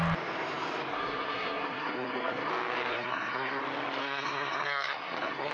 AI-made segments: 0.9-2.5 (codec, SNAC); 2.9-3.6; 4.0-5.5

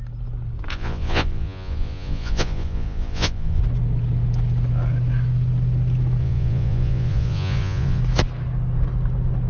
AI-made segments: 0.7-3.6 (vocoder, Vocos); 6.2-8.0

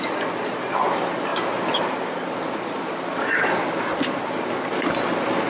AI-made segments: none

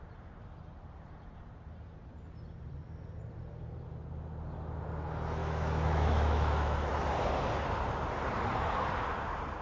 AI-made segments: 5.4-6.9 (autoencoder, DAC-VAE)

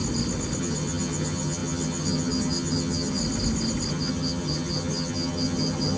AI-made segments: 0.6-3.2 (vocoder, HiFi-GAN); 3.9-6.0

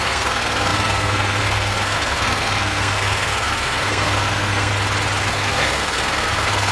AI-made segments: 0.0-4.7 (codec, SNAC); 5.2-6.7

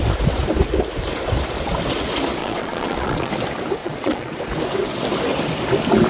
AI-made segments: 2.4-3.3 (vocoder, Vocos); 3.8-4.3